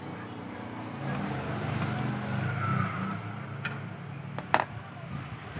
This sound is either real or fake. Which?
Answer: real